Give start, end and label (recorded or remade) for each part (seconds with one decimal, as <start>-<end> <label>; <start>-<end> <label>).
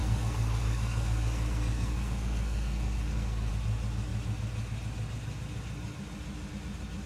0.0-3.5 remade; 3.5-7.1 recorded